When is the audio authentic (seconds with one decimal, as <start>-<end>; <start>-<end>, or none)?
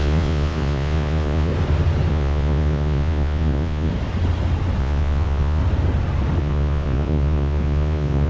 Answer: 1.5-2.1; 3.9-4.8; 5.6-6.4